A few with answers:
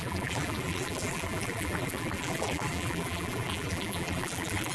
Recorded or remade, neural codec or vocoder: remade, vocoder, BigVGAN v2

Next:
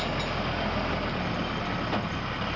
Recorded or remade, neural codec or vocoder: recorded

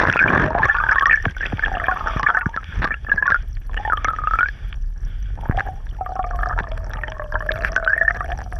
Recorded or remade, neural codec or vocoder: recorded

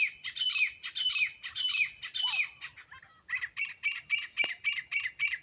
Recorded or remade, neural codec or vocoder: recorded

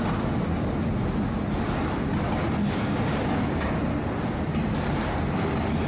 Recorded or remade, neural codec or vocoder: recorded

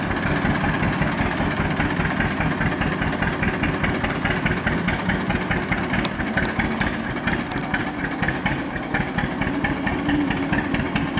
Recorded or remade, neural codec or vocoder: recorded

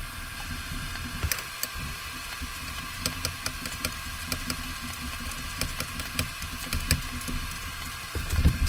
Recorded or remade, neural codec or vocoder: recorded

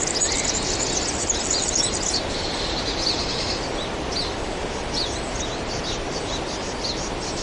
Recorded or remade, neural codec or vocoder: remade, vocoder, BigVGAN v2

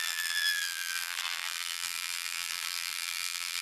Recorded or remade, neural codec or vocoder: remade, vocoder, BigVGAN v2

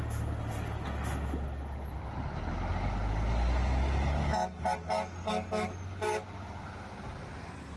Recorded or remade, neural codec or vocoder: recorded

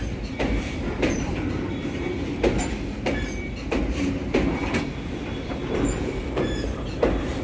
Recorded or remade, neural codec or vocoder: remade, vocoder, BigVGAN v2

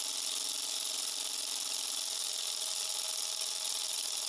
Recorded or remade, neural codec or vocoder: recorded